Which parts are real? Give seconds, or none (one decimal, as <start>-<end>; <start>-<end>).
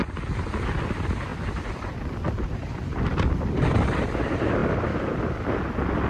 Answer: 0.0-1.3; 2.5-2.9; 3.7-6.1